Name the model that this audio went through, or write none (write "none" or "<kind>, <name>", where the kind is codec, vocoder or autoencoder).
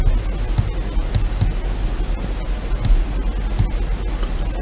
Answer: none